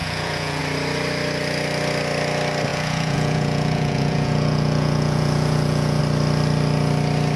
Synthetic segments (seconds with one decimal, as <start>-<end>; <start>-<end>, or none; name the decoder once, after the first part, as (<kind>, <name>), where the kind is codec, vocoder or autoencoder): 0.0-0.6 (vocoder, Vocos); 2.7-6.0